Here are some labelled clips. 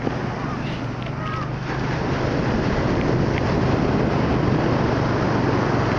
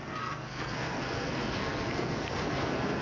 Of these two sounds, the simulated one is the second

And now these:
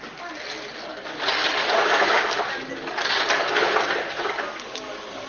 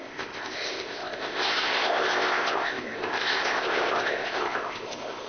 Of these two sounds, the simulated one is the second